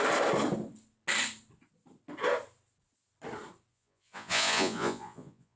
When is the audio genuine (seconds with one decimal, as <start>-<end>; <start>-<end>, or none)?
0.0-3.7